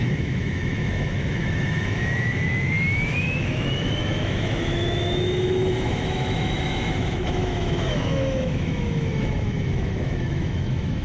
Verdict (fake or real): fake